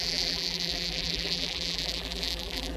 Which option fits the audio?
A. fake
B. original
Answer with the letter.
A